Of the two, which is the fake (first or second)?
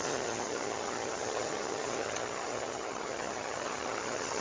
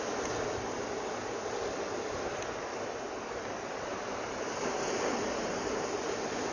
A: first